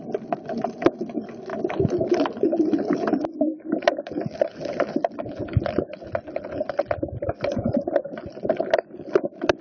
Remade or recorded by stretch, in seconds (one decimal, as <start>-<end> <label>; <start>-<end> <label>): 0.0-1.5 recorded; 1.5-6.5 remade; 6.5-9.6 recorded